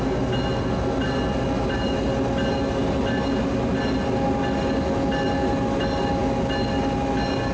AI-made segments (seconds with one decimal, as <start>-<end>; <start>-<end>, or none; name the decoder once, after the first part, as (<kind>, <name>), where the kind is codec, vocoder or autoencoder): none